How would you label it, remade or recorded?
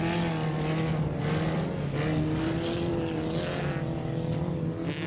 recorded